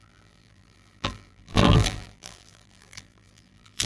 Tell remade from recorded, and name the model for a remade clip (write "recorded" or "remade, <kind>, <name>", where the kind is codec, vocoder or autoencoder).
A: remade, vocoder, BigVGAN v2